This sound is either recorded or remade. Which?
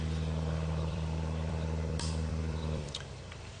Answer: remade